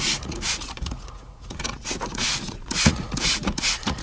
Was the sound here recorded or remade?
remade